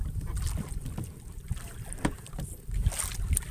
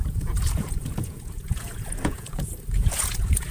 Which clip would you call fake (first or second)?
second